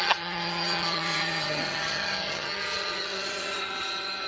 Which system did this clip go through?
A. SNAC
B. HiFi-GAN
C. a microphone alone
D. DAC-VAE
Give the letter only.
B